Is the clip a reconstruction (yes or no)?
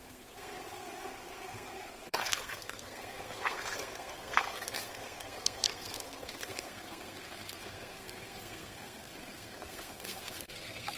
yes